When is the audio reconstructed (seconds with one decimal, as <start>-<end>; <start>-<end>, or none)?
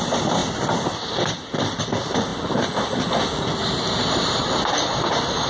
none